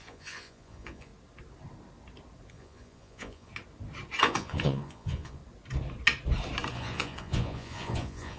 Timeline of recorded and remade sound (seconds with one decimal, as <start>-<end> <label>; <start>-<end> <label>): 0.0-1.1 remade; 1.1-2.5 recorded; 2.5-3.5 remade; 3.5-4.2 recorded; 4.2-5.4 remade; 5.4-6.7 recorded; 6.7-8.4 remade

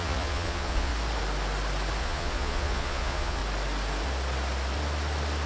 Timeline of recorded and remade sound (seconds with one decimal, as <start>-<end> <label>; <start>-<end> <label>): 0.0-0.9 remade; 0.9-2.0 recorded; 2.0-3.4 remade; 3.4-5.5 recorded

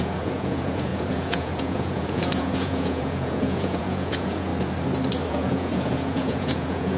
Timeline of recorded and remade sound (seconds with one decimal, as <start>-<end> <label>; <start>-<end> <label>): 0.0-4.5 remade; 4.5-5.3 recorded; 5.3-7.0 remade

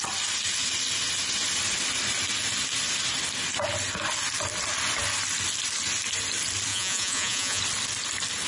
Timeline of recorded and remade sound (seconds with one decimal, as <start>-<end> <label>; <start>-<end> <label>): 0.0-6.7 recorded; 6.7-7.6 remade; 7.6-8.5 recorded